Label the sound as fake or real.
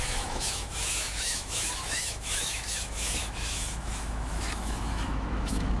fake